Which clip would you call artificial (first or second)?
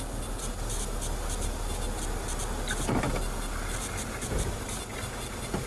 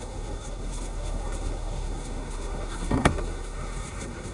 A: second